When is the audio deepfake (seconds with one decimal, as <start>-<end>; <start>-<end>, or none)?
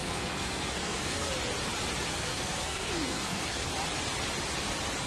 0.0-1.3; 2.1-3.7